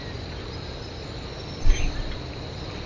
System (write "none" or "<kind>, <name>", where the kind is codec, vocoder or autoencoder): none